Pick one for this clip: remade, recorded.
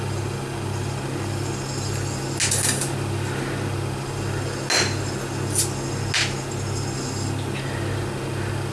recorded